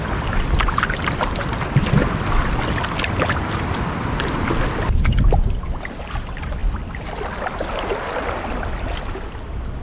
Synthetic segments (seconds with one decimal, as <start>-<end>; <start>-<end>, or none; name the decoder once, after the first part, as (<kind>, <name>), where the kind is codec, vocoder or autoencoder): none

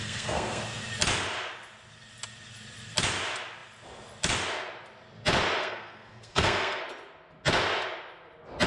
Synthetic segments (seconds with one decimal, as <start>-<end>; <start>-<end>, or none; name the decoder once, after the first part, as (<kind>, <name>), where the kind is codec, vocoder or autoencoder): 0.0-0.6 (codec, SNAC); 5.6-6.8

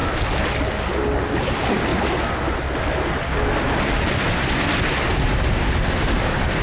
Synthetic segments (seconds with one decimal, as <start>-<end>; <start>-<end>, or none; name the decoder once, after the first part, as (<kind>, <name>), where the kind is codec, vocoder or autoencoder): none

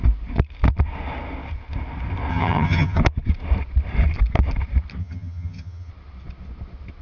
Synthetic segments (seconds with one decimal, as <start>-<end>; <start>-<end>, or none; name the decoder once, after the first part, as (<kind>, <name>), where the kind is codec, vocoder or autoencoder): 2.3-3.0 (vocoder, HiFi-GAN); 5.0-5.9

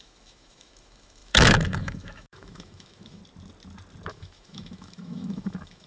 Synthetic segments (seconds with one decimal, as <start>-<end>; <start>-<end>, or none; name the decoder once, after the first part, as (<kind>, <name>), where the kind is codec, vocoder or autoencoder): 0.0-3.2 (autoencoder, DAC-VAE); 4.1-5.9

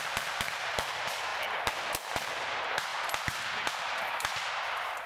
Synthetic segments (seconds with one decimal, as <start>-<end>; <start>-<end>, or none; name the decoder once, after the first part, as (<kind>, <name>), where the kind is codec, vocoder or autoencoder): none